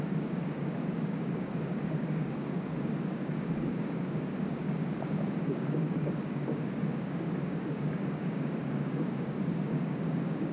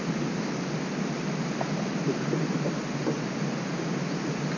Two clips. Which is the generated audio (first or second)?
first